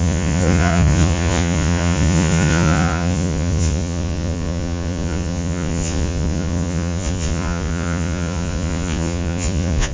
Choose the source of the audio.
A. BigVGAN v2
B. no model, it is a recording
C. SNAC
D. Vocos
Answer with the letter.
D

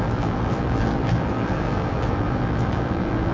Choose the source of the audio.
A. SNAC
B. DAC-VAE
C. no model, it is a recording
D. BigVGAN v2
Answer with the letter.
D